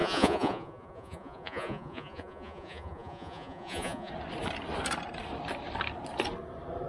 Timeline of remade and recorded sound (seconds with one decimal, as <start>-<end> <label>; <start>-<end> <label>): 0.0-4.1 remade; 4.1-6.9 recorded